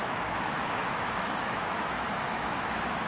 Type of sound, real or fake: fake